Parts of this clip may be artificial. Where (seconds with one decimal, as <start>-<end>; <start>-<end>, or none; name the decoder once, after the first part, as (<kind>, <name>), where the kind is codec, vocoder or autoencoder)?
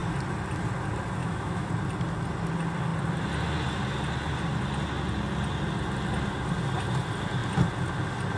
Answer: 1.2-1.7 (autoencoder, DAC-VAE)